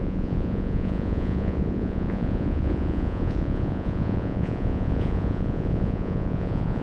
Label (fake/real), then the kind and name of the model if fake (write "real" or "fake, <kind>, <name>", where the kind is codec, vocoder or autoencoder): fake, vocoder, Vocos